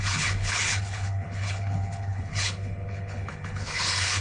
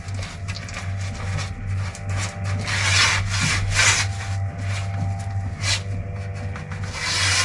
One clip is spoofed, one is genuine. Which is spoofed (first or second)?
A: first